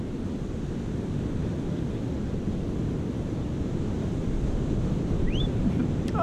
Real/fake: real